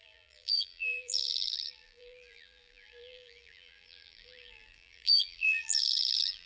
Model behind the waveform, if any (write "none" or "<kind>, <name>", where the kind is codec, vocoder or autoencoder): vocoder, BigVGAN v2